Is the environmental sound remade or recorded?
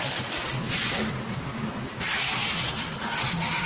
recorded